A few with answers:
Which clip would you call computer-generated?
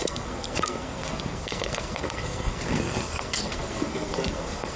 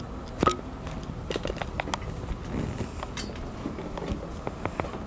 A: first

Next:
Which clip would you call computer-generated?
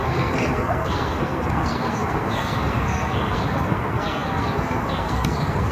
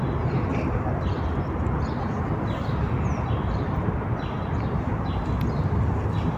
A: first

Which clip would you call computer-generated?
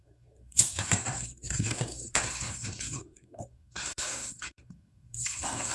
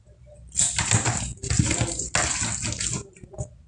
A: first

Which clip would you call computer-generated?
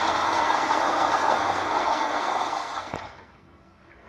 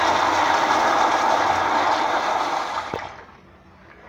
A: first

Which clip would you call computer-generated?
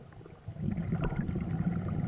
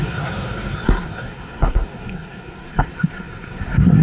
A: second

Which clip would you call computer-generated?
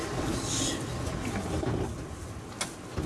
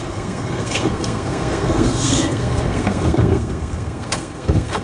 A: second